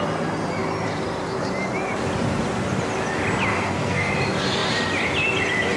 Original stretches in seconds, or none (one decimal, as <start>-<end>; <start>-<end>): 0.0-3.5; 4.1-5.8